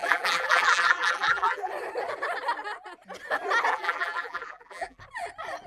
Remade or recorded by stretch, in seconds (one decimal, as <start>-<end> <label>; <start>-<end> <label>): 0.0-1.7 remade; 1.7-3.7 recorded; 3.7-5.0 remade; 5.0-5.7 recorded